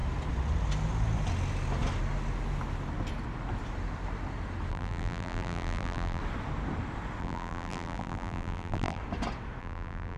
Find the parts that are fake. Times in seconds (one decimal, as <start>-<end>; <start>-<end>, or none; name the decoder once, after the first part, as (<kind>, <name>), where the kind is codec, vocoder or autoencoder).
4.7-6.2 (vocoder, BigVGAN v2); 7.2-9.0; 9.6-10.2